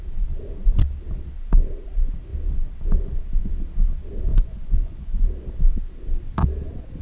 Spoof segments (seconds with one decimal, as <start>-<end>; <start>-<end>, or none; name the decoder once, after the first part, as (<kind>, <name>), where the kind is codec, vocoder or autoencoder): 4.3-5.3 (vocoder, Vocos)